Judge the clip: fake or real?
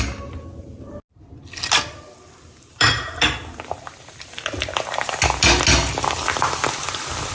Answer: real